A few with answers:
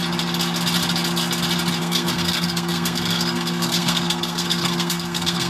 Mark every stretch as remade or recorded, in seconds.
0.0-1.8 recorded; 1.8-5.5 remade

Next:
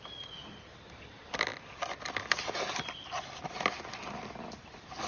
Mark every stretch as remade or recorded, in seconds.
0.0-5.1 recorded